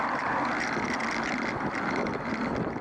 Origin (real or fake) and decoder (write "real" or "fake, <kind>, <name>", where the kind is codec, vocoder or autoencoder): real